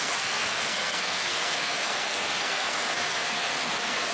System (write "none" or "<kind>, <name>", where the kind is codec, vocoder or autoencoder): codec, SNAC